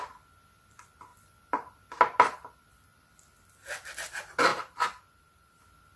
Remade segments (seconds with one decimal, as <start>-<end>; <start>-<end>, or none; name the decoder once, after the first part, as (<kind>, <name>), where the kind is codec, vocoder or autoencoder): 4.5-5.6 (vocoder, BigVGAN v2)